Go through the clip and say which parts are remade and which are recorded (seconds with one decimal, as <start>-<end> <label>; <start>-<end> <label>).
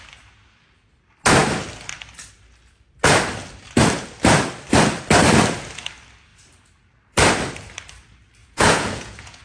0.0-8.4 recorded; 8.4-9.4 remade